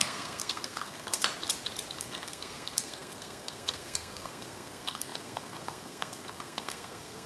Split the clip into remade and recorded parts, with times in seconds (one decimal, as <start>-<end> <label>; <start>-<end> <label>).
0.0-1.2 remade; 1.2-2.0 recorded; 2.0-7.3 remade